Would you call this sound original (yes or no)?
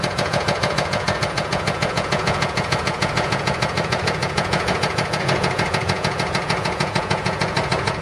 no